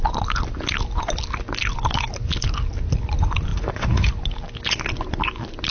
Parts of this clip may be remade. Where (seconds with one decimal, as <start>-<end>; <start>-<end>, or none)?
3.5-4.1